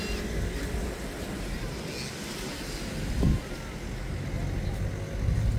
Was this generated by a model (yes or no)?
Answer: no